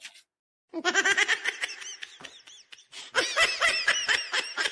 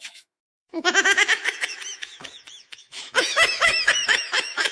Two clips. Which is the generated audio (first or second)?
second